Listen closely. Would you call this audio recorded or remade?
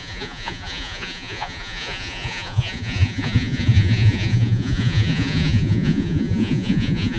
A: remade